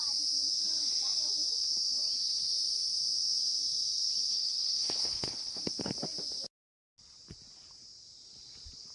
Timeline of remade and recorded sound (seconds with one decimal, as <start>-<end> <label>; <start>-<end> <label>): 0.0-4.3 recorded; 4.3-5.9 remade; 5.9-8.9 recorded